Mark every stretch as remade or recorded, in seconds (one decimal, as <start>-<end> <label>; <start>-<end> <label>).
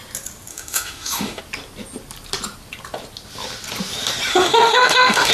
0.0-0.5 recorded; 0.5-1.4 remade; 1.4-4.3 recorded; 4.3-5.3 remade